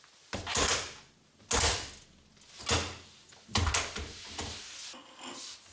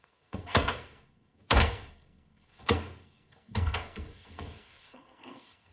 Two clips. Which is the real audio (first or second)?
first